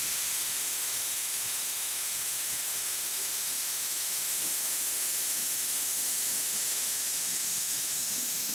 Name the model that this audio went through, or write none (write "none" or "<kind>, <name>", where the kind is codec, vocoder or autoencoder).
autoencoder, DAC-VAE